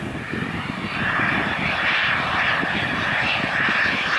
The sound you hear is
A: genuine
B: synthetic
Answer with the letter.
B